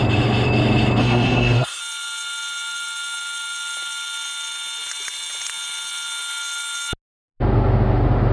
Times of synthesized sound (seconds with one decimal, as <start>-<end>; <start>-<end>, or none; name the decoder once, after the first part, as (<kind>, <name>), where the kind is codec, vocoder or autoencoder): 1.0-1.8 (codec, SNAC)